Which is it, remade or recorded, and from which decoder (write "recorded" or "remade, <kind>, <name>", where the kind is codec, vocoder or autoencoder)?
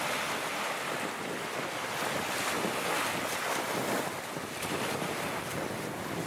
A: recorded